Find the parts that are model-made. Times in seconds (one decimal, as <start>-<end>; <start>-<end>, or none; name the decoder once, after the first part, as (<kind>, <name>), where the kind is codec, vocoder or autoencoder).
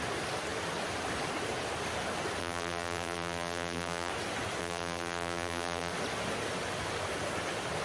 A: 2.4-4.1 (vocoder, BigVGAN v2); 4.6-5.9